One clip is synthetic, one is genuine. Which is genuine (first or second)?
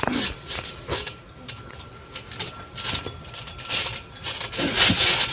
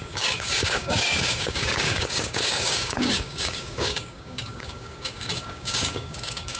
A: first